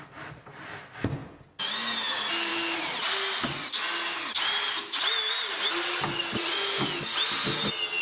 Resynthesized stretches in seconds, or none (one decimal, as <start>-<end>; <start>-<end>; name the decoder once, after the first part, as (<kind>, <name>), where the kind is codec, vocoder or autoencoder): none